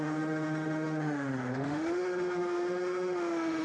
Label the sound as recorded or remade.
remade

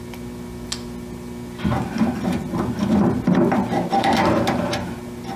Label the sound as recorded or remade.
recorded